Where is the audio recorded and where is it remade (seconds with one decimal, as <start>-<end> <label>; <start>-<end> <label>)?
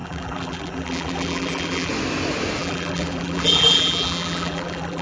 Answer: 0.0-1.9 remade; 1.9-2.6 recorded; 2.6-5.0 remade